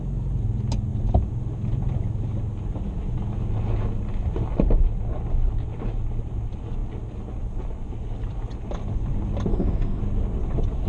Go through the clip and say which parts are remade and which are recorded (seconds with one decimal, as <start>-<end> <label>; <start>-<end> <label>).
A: 0.0-9.5 recorded; 9.5-10.0 remade; 10.0-10.9 recorded

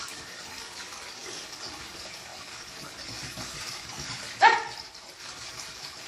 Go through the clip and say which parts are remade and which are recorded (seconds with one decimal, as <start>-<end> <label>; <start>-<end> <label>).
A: 0.0-4.5 remade; 4.5-5.2 recorded; 5.2-6.1 remade

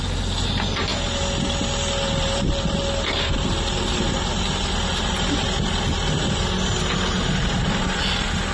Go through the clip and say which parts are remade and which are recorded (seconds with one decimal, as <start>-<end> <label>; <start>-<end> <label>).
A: 0.0-8.5 recorded

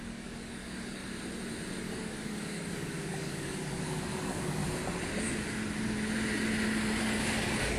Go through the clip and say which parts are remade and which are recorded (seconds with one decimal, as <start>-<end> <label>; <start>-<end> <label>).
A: 0.0-1.0 remade; 1.0-1.8 recorded; 1.8-4.6 remade; 4.6-7.0 recorded; 7.0-7.8 remade